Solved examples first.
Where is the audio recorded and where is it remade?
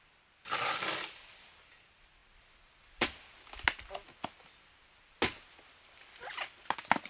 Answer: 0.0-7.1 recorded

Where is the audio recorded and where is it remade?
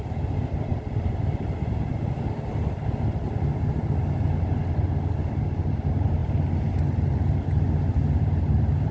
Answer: 0.0-8.9 recorded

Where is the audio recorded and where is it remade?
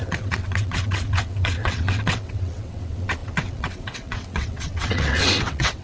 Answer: 0.0-5.8 remade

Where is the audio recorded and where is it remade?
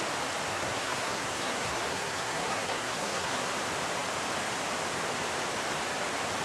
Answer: 0.0-0.5 recorded; 0.5-3.5 remade; 3.5-6.4 recorded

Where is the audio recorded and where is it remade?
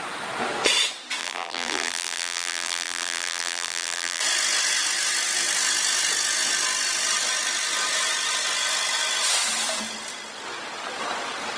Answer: 0.0-1.2 recorded; 1.2-4.2 remade; 4.2-11.6 recorded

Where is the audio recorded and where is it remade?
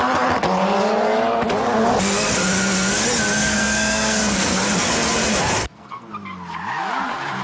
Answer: 0.0-3.4 recorded; 3.4-4.6 remade; 4.6-5.6 recorded; 5.6-6.1 remade; 6.1-7.4 recorded